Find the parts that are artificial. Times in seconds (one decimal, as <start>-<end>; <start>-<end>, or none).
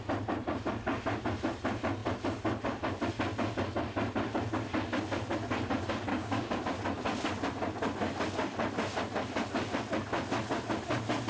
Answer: 6.1-6.6